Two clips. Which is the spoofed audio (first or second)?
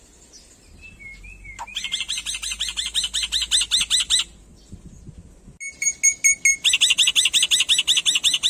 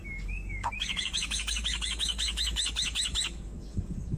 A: second